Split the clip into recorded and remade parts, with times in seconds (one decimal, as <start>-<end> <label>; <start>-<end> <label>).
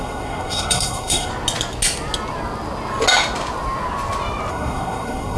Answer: 0.0-1.3 remade; 1.3-4.5 recorded; 4.5-5.4 remade